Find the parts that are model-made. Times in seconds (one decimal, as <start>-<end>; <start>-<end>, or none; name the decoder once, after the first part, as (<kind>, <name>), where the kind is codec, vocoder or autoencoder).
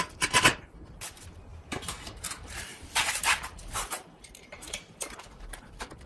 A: 0.0-6.1 (vocoder, BigVGAN v2)